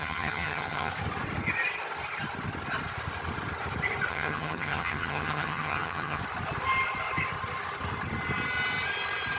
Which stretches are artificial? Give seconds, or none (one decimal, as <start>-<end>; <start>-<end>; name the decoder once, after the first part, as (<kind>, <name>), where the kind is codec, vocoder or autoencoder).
0.0-0.9 (vocoder, HiFi-GAN); 4.1-6.2